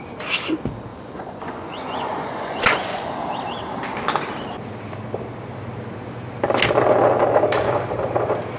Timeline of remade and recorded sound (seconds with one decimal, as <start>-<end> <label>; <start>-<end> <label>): 0.0-0.9 recorded; 0.9-3.2 remade; 3.2-8.6 recorded